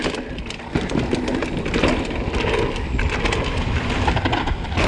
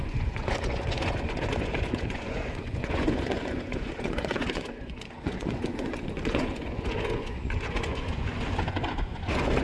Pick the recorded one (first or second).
first